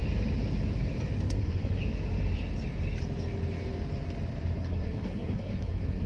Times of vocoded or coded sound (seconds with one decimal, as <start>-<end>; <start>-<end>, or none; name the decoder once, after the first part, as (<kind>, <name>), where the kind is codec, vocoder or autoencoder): 1.3-1.8 (codec, SNAC); 4.6-6.1